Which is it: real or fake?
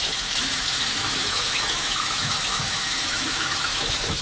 fake